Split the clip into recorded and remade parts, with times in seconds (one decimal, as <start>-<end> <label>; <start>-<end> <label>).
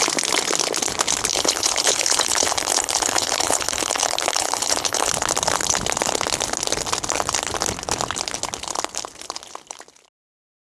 0.0-1.3 recorded; 1.3-5.1 remade; 5.1-10.7 recorded